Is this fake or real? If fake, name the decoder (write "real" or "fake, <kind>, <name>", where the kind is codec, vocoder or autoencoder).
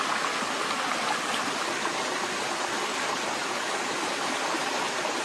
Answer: real